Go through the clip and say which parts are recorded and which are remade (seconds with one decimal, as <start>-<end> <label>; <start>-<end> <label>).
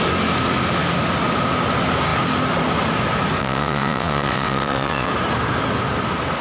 0.0-3.4 recorded; 3.4-5.1 remade; 5.1-6.4 recorded